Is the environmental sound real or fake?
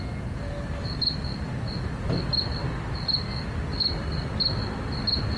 real